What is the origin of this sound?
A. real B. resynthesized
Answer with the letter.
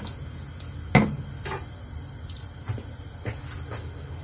A